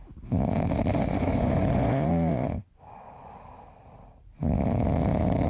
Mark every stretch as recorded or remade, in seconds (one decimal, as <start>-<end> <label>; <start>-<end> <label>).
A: 0.0-0.9 recorded; 0.9-3.3 remade; 3.3-5.5 recorded